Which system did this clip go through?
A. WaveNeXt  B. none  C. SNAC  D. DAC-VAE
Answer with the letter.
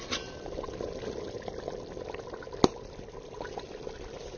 B